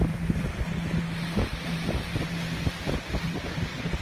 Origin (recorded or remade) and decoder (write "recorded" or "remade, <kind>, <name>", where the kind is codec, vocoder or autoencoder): recorded